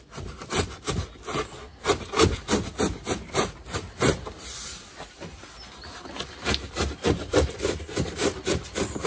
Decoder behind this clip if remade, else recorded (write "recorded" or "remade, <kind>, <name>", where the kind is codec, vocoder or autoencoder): recorded